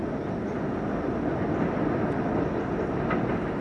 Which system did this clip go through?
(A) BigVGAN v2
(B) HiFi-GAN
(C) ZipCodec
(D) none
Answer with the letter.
D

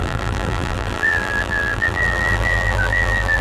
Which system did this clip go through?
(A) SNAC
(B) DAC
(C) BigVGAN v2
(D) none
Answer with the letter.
C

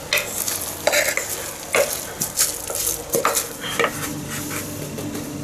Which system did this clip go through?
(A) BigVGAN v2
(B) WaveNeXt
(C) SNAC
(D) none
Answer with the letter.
D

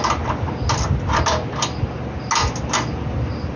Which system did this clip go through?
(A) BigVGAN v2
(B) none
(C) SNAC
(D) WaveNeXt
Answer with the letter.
B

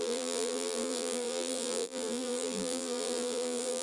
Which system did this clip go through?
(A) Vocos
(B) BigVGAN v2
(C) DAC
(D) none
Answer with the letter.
B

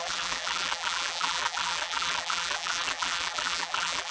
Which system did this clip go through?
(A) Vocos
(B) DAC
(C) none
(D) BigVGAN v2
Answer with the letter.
D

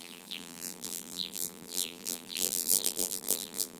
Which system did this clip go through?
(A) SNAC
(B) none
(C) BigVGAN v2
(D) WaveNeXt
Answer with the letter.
C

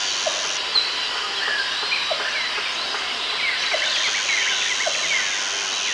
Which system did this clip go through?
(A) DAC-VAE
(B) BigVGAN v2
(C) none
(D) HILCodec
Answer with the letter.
C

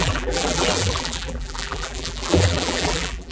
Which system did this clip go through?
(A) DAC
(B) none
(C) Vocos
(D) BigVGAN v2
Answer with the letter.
D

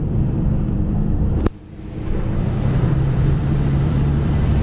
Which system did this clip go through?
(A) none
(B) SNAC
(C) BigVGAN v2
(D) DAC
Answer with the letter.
C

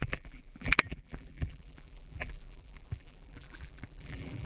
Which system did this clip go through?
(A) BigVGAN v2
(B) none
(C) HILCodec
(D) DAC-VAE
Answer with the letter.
A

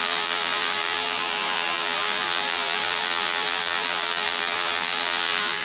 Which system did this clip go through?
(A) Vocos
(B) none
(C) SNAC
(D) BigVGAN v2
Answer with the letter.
D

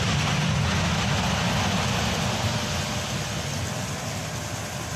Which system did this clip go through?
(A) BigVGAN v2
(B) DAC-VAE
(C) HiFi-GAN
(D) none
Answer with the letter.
D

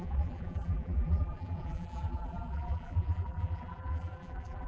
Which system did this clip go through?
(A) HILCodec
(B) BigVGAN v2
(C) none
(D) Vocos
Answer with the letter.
B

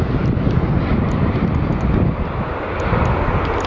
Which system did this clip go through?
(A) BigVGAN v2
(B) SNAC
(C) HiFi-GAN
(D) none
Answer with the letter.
D